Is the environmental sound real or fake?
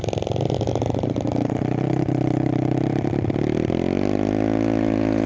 real